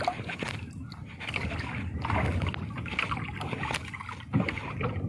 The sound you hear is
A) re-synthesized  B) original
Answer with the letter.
B